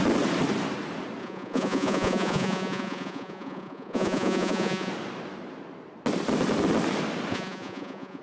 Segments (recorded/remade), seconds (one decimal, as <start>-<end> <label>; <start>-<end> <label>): 0.0-1.2 recorded; 1.2-4.9 remade; 4.9-7.3 recorded; 7.3-8.2 remade